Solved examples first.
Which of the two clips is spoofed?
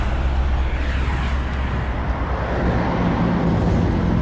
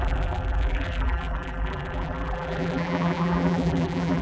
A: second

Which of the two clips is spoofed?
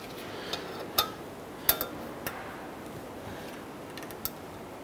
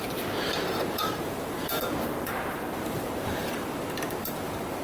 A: second